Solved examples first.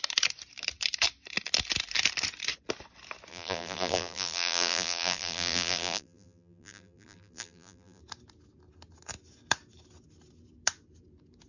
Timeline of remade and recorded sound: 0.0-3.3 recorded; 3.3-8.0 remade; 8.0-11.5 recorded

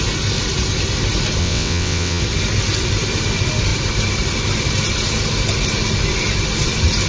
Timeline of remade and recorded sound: 0.0-1.4 recorded; 1.4-2.2 remade; 2.2-7.1 recorded

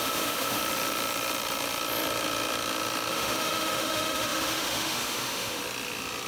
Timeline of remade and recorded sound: 0.0-0.6 remade; 0.6-3.1 recorded; 3.1-5.6 remade; 5.6-6.3 recorded

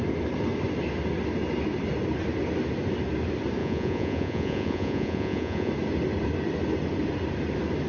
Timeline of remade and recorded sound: 0.0-3.6 recorded; 3.6-5.7 remade; 5.7-7.9 recorded

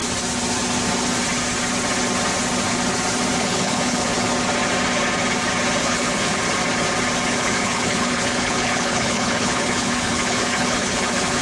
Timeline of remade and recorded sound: 0.0-3.4 recorded; 3.4-4.3 remade; 4.3-5.8 recorded; 5.8-6.4 remade; 6.4-7.3 recorded; 7.3-11.4 remade